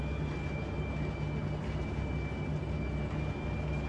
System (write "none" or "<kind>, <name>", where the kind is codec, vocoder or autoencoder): none